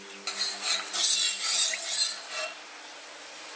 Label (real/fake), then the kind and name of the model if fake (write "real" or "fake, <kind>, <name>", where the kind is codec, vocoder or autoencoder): real